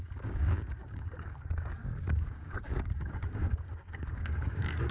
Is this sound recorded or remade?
remade